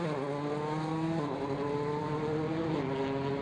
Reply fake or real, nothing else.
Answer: real